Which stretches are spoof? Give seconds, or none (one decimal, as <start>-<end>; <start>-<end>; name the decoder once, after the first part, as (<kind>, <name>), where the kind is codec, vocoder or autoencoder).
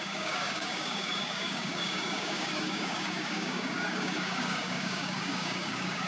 0.0-6.1 (codec, DAC)